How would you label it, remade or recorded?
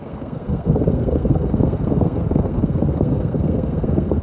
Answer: remade